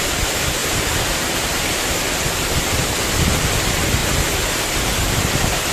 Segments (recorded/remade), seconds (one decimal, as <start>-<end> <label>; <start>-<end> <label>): 0.0-0.6 recorded; 0.6-1.2 remade; 1.2-5.7 recorded